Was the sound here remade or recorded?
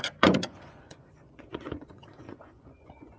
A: remade